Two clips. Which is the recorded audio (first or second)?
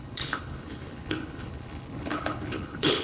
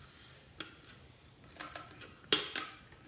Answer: second